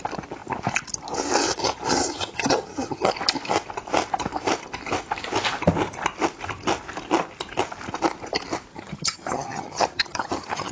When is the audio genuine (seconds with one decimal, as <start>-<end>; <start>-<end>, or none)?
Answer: 0.0-1.6; 3.1-8.7